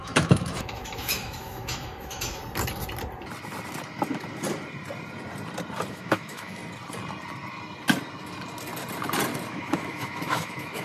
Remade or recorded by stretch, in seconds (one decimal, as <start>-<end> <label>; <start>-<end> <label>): 0.0-2.4 remade; 2.4-5.9 recorded; 5.9-6.6 remade; 6.6-9.5 recorded; 9.5-10.8 remade